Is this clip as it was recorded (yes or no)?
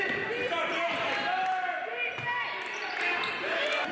yes